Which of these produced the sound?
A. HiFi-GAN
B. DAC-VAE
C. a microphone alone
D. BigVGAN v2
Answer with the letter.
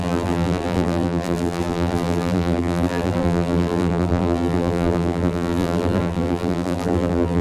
D